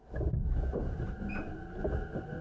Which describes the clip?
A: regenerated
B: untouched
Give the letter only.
B